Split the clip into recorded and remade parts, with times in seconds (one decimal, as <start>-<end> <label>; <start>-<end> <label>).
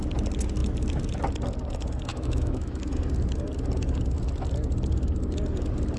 0.0-2.1 recorded; 2.1-2.8 remade; 2.8-6.0 recorded